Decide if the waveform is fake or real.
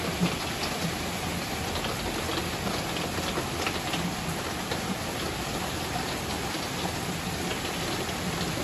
real